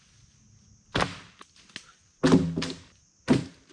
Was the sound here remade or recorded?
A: recorded